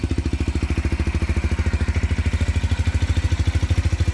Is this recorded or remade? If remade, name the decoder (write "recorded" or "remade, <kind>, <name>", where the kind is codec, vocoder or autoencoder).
recorded